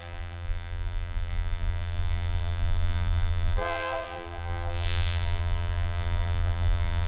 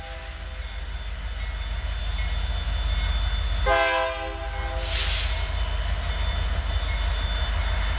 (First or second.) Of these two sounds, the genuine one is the second